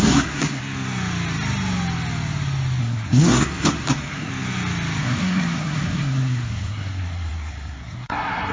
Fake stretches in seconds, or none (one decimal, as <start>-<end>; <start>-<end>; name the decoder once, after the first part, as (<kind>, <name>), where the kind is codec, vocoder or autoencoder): 0.0-0.6 (codec, SNAC); 2.8-4.3; 5.0-8.5